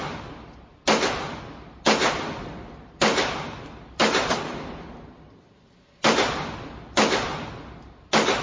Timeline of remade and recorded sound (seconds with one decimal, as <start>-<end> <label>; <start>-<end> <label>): 0.0-8.4 recorded